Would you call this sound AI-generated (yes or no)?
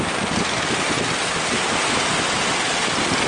no